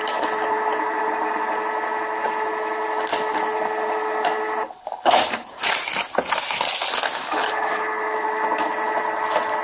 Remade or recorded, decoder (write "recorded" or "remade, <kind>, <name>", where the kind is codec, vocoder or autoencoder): recorded